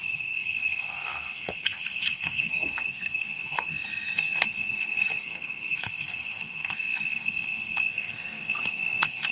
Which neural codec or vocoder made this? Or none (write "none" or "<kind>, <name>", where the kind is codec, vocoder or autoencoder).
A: codec, SNAC